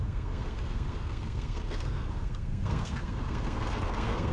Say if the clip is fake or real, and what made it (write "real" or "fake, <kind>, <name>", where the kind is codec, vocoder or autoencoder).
fake, codec, SNAC